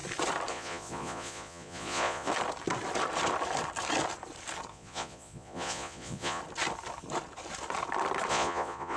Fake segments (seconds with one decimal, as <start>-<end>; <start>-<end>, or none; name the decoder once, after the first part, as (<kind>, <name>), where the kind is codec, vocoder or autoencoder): 0.5-2.3 (vocoder, Vocos); 4.7-6.4; 8.3-9.0